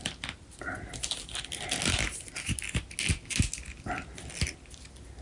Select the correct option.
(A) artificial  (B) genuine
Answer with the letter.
B